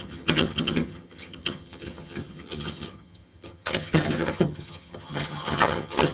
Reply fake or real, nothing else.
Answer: fake